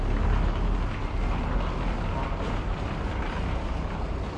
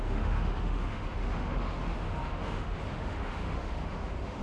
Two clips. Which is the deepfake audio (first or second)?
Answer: second